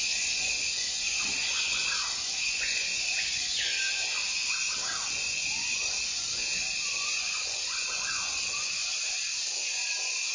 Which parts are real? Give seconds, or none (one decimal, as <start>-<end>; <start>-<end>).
4.2-5.1; 8.9-9.7